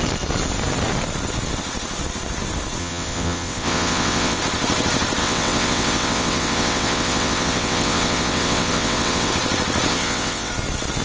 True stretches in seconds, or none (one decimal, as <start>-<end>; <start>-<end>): 0.0-2.8; 4.4-5.2; 9.3-9.9; 10.5-11.0